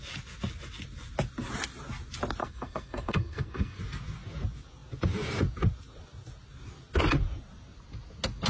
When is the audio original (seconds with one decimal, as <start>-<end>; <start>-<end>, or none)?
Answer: 0.0-2.4; 3.8-8.5